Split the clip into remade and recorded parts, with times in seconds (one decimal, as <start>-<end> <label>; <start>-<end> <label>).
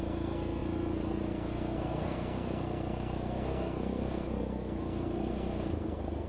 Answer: 0.0-6.3 remade